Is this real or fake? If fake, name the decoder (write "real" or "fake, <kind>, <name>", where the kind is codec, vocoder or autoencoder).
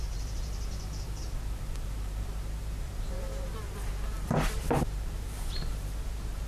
fake, vocoder, BigVGAN v2